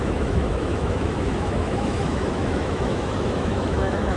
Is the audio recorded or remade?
remade